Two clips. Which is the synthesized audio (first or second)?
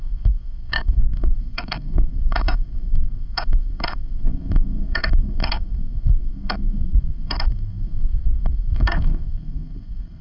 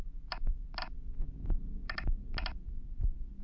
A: first